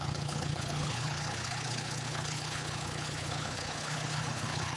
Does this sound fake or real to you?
fake